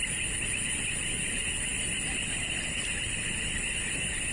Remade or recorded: recorded